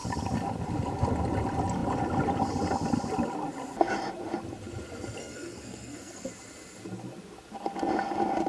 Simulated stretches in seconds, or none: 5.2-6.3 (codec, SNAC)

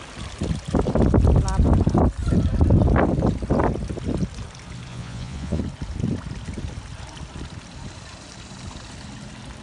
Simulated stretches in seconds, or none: 4.9-5.6 (vocoder, Vocos)

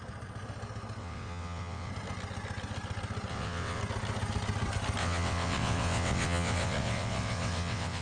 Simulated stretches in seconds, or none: 1.0-1.9 (vocoder, WaveNeXt); 3.3-3.8; 5.0-8.0

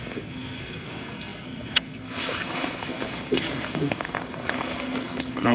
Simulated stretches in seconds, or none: 0.0-5.5 (codec, SNAC)

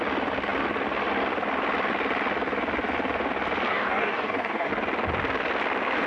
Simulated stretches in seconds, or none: 3.7-4.7 (codec, DAC)

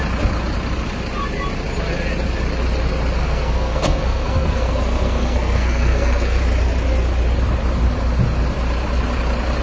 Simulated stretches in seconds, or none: 3.2-6.4 (codec, SNAC)

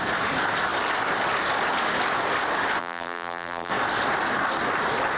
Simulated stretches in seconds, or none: 2.8-3.7 (vocoder, BigVGAN v2)